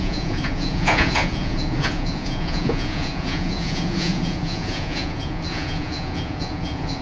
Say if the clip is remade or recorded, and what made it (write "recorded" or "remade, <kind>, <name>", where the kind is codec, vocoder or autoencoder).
remade, vocoder, Vocos